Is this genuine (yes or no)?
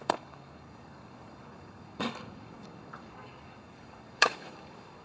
no